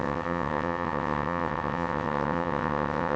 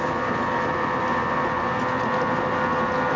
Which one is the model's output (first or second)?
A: first